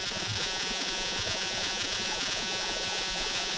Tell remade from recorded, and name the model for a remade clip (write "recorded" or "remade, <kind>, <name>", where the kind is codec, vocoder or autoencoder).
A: remade, vocoder, Vocos